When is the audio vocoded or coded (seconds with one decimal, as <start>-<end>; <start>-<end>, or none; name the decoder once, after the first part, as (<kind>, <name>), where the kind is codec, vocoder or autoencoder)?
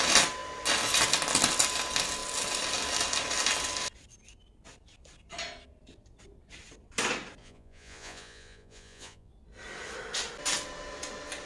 7.4-9.3 (vocoder, Vocos)